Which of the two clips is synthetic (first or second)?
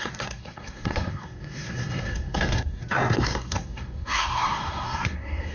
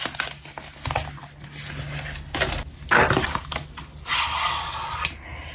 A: first